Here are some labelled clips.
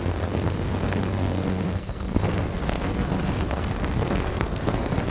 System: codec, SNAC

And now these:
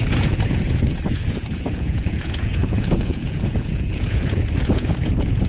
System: vocoder, Vocos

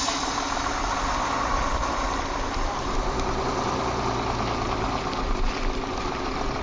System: vocoder, BigVGAN v2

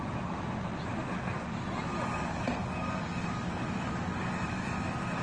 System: none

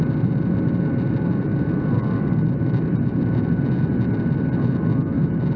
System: none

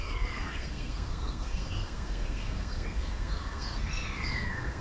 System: codec, SNAC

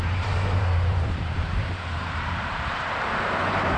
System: vocoder, BigVGAN v2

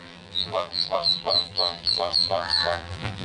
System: vocoder, BigVGAN v2